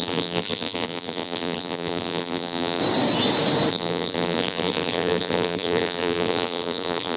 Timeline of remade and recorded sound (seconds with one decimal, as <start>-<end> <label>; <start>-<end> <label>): 0.0-2.8 remade; 2.8-3.7 recorded; 3.7-7.2 remade

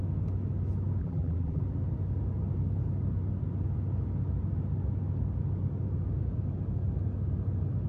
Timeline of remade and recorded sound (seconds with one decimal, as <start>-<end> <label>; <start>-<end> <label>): 0.0-1.0 recorded; 1.0-1.6 remade; 1.6-7.9 recorded

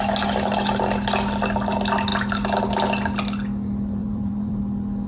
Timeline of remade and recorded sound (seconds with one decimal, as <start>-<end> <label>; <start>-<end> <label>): 0.0-4.0 recorded; 4.0-4.6 remade; 4.6-5.1 recorded

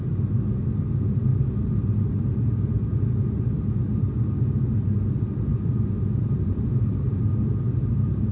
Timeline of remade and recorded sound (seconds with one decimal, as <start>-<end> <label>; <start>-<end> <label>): 0.0-1.3 recorded; 1.3-2.4 remade; 2.4-5.5 recorded; 5.5-7.2 remade; 7.2-8.3 recorded

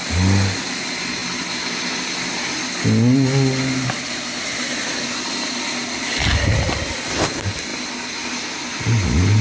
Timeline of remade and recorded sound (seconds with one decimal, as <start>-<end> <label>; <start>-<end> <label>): 0.0-9.4 recorded

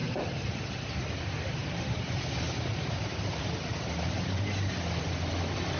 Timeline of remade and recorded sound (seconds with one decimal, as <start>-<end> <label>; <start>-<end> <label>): 0.0-0.7 remade; 0.7-1.6 recorded; 1.6-5.1 remade; 5.1-5.8 recorded

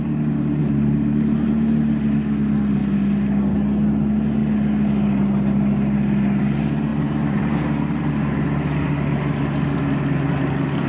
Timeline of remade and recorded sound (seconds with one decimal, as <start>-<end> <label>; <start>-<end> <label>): 0.0-0.6 recorded; 0.6-1.5 remade; 1.5-6.9 recorded; 6.9-8.1 remade; 8.1-10.9 recorded

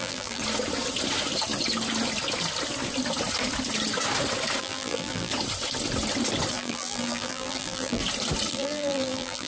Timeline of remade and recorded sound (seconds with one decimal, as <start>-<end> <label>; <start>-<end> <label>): 0.0-0.4 remade; 0.4-4.6 recorded; 4.6-5.3 remade; 5.3-6.5 recorded; 6.5-8.0 remade; 8.0-8.5 recorded; 8.5-9.5 remade